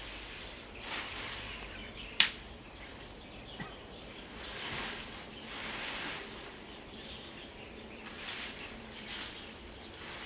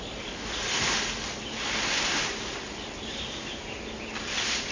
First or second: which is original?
second